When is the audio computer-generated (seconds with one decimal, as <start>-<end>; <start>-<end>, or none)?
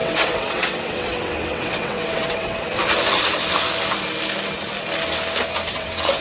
0.0-2.7; 5.7-6.2